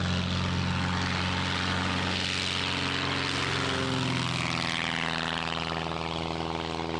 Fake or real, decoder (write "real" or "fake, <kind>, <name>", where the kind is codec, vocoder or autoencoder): real